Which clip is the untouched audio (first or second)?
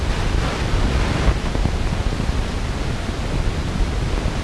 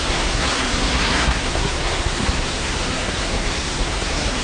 first